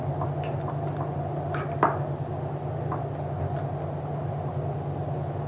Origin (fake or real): real